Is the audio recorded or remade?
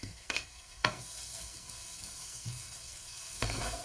remade